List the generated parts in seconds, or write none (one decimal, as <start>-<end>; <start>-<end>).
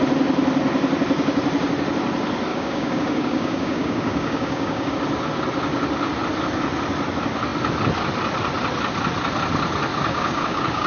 2.5-4.9; 9.9-10.9